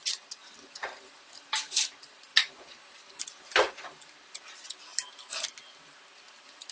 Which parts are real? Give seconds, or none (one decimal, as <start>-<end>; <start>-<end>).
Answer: 0.0-6.7